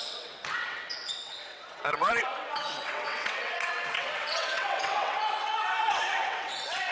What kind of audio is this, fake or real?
fake